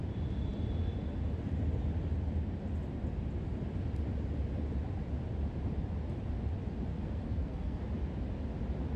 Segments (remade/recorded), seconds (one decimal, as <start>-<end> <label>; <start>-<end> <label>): 0.0-6.9 recorded; 6.9-7.8 remade; 7.8-9.0 recorded